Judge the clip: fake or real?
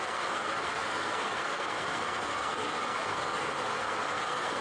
fake